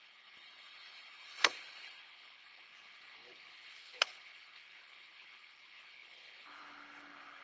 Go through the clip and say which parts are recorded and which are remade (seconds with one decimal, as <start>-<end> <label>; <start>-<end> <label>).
0.0-7.4 remade